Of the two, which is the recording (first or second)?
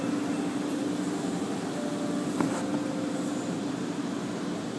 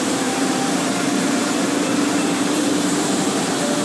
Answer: first